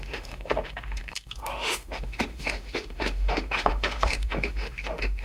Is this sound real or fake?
fake